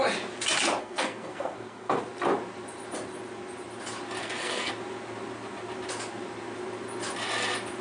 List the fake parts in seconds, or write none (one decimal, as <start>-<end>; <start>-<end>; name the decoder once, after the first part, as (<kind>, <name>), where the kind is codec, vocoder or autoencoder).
0.8-2.0 (codec, SNAC); 4.2-4.7